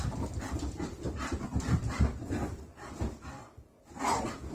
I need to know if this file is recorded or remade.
recorded